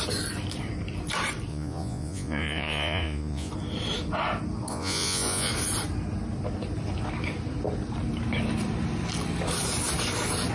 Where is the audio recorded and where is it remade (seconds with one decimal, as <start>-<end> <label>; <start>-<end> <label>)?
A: 0.0-1.5 recorded; 1.5-3.5 remade; 3.5-4.7 recorded; 4.7-5.5 remade; 5.5-10.5 recorded